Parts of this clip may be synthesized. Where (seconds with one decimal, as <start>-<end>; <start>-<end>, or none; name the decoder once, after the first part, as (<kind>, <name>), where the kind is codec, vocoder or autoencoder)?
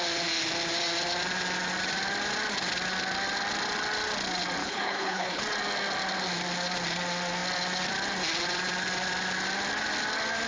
4.6-5.4 (codec, HILCodec)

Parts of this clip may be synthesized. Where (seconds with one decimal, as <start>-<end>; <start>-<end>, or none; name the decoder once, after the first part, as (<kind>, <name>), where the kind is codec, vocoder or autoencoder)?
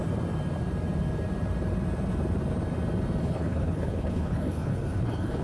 3.2-5.4 (codec, HILCodec)